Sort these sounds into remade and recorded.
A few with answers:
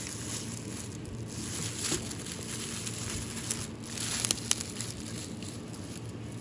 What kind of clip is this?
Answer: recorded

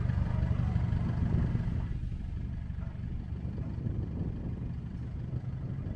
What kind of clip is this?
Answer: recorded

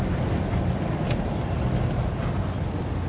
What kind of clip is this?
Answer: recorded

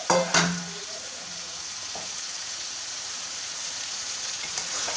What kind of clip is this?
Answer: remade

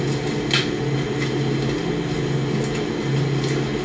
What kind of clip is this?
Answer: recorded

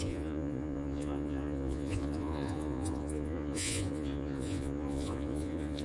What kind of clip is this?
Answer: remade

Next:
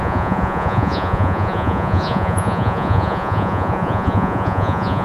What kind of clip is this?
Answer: remade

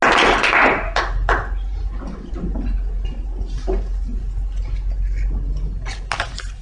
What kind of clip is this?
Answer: recorded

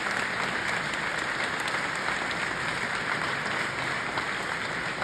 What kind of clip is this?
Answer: recorded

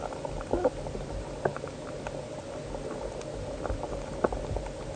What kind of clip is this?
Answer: recorded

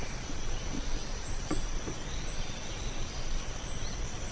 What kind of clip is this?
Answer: remade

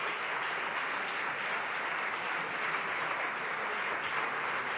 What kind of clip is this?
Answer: recorded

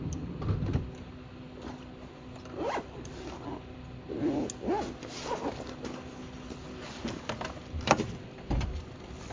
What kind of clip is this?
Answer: recorded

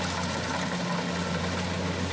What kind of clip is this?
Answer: recorded